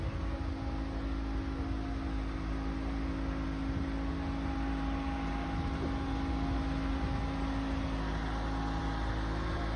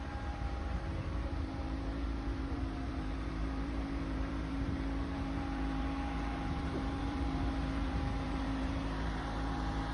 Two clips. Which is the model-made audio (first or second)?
second